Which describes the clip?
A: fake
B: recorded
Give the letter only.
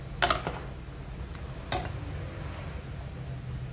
B